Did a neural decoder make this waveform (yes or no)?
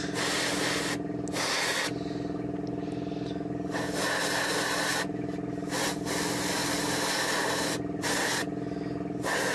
no